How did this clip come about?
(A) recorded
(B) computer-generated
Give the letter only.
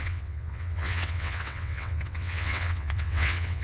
B